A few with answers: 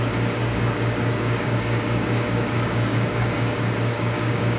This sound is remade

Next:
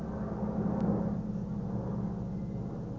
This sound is recorded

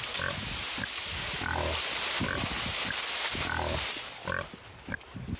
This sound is recorded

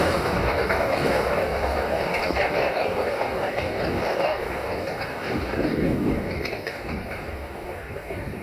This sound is remade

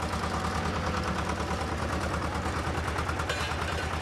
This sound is recorded